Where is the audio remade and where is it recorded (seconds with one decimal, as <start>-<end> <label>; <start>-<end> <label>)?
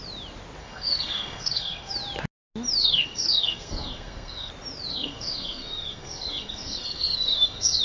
0.0-0.6 recorded; 0.6-1.9 remade; 1.9-2.8 recorded; 2.8-4.5 remade; 4.5-4.9 recorded; 4.9-7.8 remade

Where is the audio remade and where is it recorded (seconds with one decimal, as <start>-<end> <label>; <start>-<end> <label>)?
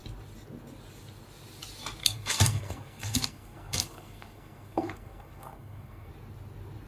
0.0-2.0 recorded; 2.0-6.1 remade; 6.1-6.9 recorded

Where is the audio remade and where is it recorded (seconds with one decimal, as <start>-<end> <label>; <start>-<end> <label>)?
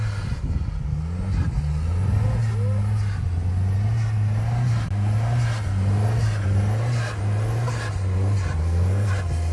0.0-8.6 recorded; 8.6-9.1 remade; 9.1-9.5 recorded